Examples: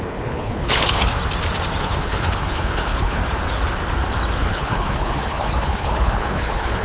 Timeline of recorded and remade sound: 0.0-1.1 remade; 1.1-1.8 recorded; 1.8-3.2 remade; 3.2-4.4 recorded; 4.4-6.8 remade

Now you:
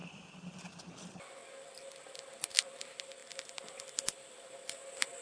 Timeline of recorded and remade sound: 0.0-5.2 recorded

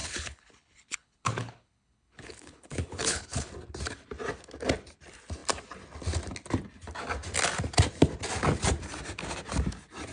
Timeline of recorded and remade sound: 0.0-3.5 remade; 3.5-10.1 recorded

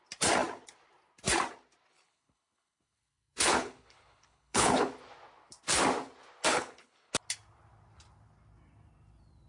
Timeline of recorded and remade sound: 0.0-1.9 recorded; 1.9-4.9 remade; 4.9-6.5 recorded; 6.5-7.1 remade; 7.1-9.5 recorded

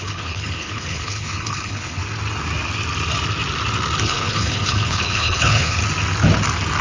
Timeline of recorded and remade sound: 0.0-2.0 remade; 2.0-4.0 recorded; 4.0-5.8 remade; 5.8-6.8 recorded

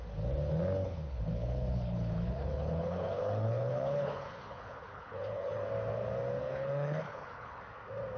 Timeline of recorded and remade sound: 0.0-0.8 recorded; 0.8-5.7 remade; 5.7-6.4 recorded; 6.4-7.6 remade; 7.6-8.2 recorded

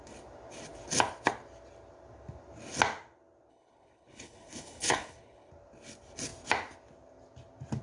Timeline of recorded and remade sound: 0.0-3.5 recorded; 3.5-5.5 remade; 5.5-7.8 recorded